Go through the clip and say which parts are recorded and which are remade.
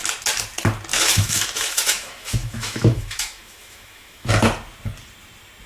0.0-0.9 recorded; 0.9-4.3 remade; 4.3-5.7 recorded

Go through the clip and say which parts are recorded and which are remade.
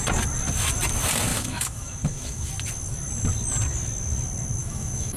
0.0-1.3 recorded; 1.3-2.5 remade; 2.5-4.6 recorded; 4.6-5.2 remade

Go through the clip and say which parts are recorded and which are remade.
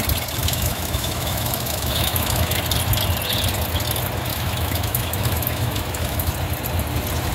0.0-0.4 recorded; 0.4-2.6 remade; 2.6-4.3 recorded; 4.3-6.3 remade; 6.3-7.3 recorded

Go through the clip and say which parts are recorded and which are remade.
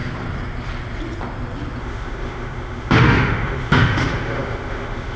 0.0-1.8 recorded; 1.8-5.2 remade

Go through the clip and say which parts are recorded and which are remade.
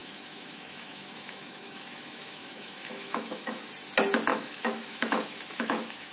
0.0-3.7 remade; 3.7-4.3 recorded; 4.3-6.1 remade